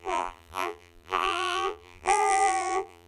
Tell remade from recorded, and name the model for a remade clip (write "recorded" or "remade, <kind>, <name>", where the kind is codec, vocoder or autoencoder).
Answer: remade, vocoder, BigVGAN v2